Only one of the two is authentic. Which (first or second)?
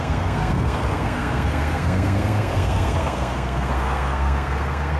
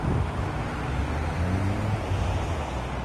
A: second